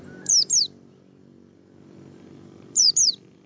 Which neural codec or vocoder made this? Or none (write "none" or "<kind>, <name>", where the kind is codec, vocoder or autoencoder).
vocoder, BigVGAN v2